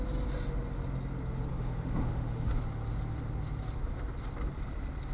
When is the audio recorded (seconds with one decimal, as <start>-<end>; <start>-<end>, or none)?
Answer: 0.0-1.5; 2.6-5.1